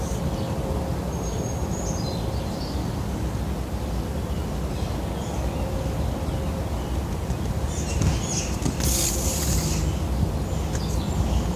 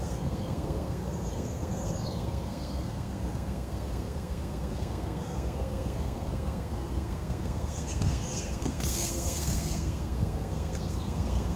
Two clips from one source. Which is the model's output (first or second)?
second